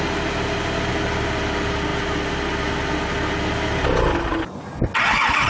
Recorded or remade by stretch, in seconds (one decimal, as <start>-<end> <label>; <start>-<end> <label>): 0.0-5.5 recorded